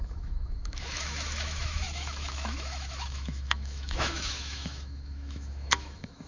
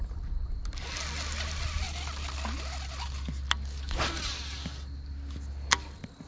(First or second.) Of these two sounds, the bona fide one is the second